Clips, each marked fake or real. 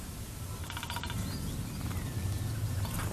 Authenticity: real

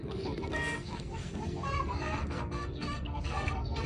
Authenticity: fake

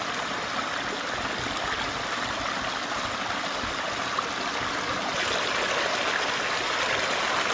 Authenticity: real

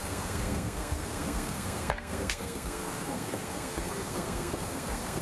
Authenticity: fake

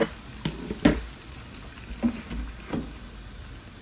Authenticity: real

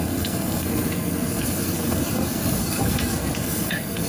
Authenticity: fake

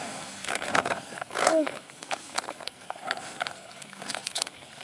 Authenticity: fake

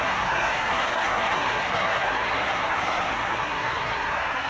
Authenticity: fake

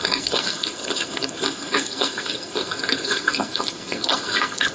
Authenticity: fake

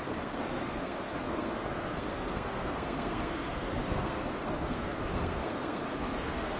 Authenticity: fake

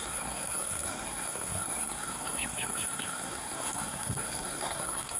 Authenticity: fake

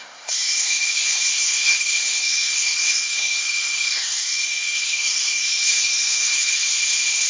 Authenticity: fake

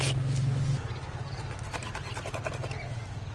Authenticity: real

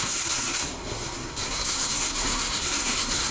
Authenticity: fake